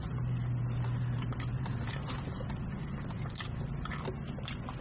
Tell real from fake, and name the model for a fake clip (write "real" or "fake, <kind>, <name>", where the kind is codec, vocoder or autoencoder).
real